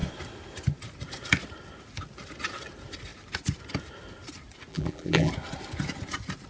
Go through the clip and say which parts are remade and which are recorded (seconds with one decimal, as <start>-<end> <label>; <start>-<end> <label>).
0.0-4.7 recorded; 4.7-5.3 remade; 5.3-6.5 recorded